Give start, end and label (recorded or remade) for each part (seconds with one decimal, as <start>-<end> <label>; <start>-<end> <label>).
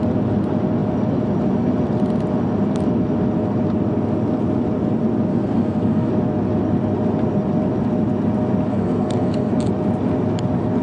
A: 0.0-5.3 recorded; 5.3-6.1 remade; 6.1-8.7 recorded; 8.7-9.5 remade; 9.5-10.8 recorded